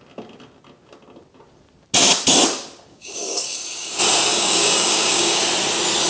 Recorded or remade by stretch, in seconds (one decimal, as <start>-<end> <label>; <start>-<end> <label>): 0.0-2.9 recorded; 2.9-3.9 remade; 3.9-4.3 recorded; 4.3-5.4 remade; 5.4-6.1 recorded